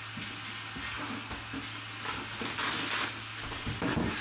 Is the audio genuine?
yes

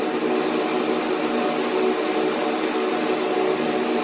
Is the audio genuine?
yes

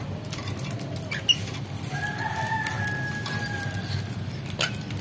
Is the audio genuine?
yes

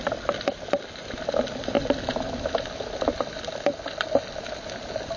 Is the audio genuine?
yes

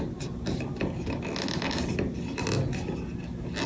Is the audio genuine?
yes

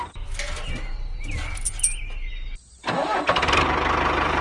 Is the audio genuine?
yes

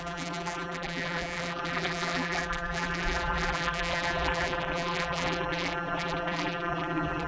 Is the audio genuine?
no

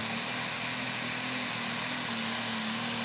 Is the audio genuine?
yes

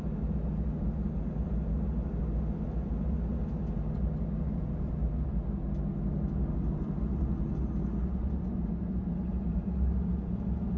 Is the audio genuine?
yes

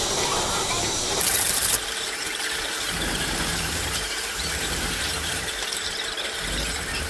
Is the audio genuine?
no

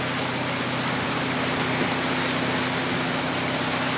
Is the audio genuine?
yes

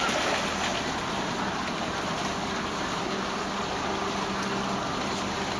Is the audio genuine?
yes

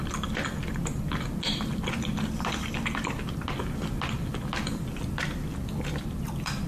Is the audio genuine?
yes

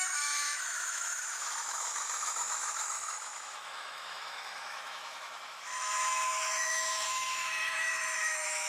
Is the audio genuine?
no